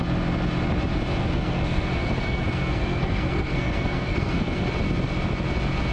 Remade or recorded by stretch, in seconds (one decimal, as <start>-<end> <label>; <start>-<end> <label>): 0.0-1.2 recorded; 1.2-4.7 remade; 4.7-5.9 recorded